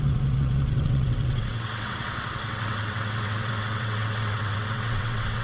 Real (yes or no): no